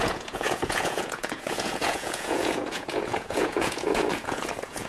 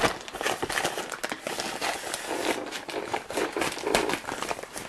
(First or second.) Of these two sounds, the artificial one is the first